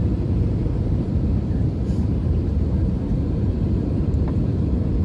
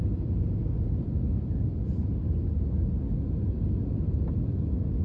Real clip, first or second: second